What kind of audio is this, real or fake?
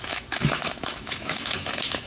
fake